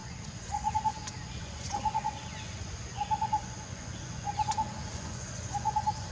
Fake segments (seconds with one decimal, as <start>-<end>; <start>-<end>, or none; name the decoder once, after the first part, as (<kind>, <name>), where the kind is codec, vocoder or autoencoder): 0.0-6.1 (vocoder, Vocos)